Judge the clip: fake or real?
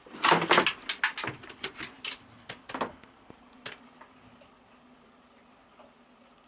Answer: real